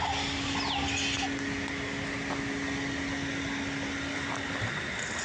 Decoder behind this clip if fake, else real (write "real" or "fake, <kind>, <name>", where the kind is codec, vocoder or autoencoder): real